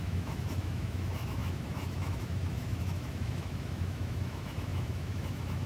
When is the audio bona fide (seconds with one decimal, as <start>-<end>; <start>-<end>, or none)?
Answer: none